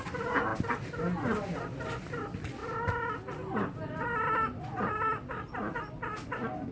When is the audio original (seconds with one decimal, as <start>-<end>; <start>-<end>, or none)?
0.0-6.7

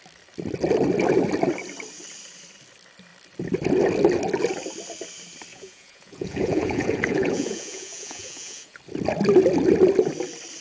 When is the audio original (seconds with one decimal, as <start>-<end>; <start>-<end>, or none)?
0.0-5.5; 8.8-10.6